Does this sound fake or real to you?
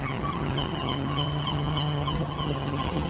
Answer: fake